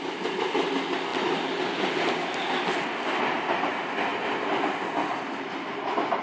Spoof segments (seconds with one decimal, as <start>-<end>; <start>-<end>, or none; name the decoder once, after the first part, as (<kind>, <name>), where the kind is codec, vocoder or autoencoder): none